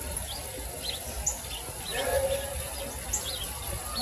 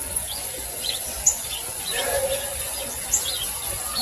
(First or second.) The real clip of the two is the first